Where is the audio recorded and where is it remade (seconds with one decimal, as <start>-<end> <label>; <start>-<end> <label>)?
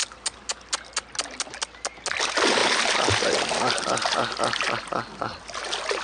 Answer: 0.0-6.0 recorded